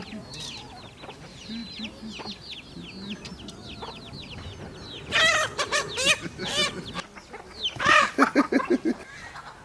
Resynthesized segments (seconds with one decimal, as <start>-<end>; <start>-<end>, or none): none